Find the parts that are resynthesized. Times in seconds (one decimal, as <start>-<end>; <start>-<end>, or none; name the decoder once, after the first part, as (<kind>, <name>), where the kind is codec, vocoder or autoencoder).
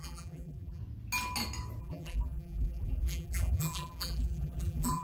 0.0-0.8 (vocoder, BigVGAN v2); 1.8-5.0